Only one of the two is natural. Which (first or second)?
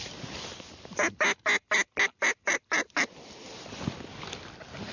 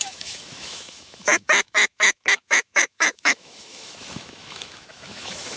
first